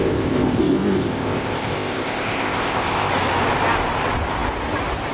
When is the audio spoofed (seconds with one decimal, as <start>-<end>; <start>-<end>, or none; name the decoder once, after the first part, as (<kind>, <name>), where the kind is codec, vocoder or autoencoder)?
0.0-3.1 (codec, ZipCodec)